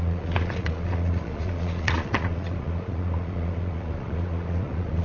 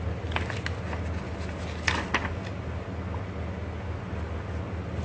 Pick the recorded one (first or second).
second